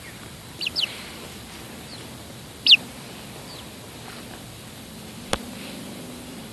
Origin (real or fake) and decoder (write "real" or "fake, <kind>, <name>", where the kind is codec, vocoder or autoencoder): fake, vocoder, BigVGAN v2